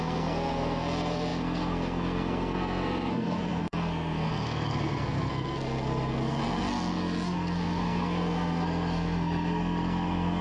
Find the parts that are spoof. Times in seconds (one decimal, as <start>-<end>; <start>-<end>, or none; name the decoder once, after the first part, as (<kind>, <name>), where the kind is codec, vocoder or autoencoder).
0.0-10.4 (codec, SNAC)